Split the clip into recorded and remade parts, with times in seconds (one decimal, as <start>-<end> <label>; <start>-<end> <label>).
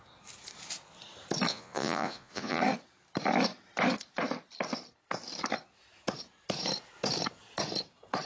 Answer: 0.0-1.5 recorded; 1.5-2.6 remade; 2.6-8.3 recorded